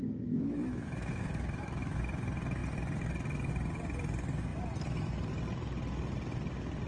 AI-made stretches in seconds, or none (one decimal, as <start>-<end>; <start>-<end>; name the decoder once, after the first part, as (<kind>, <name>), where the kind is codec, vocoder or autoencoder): 0.0-2.0 (autoencoder, DAC-VAE)